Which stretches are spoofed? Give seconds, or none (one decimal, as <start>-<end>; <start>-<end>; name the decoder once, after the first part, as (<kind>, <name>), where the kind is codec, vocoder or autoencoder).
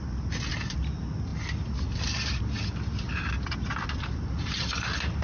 none